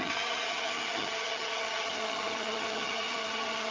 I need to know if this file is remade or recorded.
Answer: remade